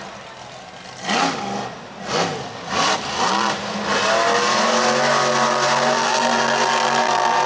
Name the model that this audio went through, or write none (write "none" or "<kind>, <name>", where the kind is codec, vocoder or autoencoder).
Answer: none